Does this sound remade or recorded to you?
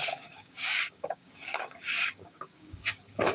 remade